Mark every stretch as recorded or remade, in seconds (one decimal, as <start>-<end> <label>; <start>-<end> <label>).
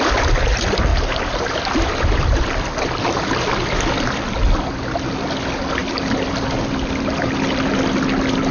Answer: 0.0-0.9 recorded; 0.9-3.9 remade; 3.9-5.8 recorded; 5.8-7.7 remade; 7.7-8.5 recorded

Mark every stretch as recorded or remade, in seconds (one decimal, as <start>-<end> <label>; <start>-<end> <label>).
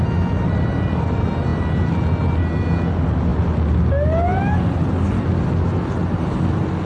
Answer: 0.0-6.9 recorded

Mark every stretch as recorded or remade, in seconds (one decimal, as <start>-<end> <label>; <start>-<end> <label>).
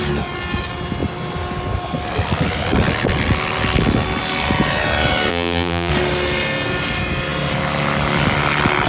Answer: 0.0-5.3 recorded; 5.3-5.9 remade; 5.9-8.9 recorded